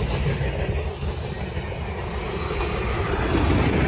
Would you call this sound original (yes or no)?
yes